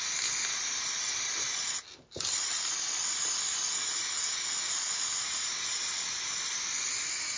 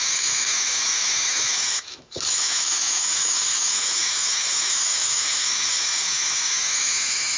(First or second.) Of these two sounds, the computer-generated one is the second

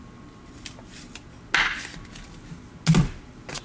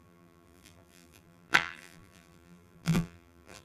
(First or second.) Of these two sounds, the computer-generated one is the second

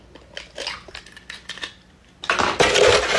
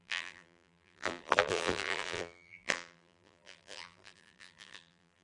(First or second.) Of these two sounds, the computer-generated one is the second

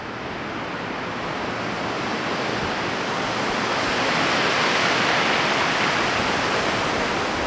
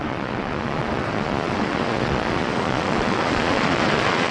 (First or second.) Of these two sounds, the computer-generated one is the second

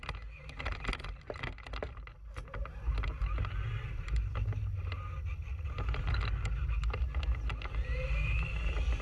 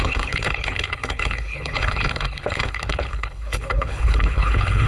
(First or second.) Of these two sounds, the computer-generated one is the second